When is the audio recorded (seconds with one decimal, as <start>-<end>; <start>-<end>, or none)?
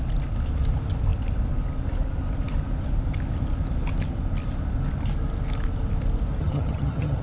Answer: 0.0-6.4